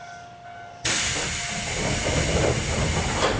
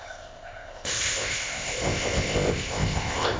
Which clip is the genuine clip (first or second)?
first